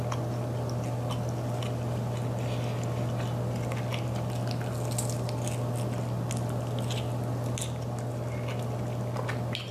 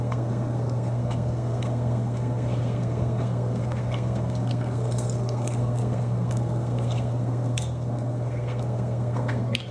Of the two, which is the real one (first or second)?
first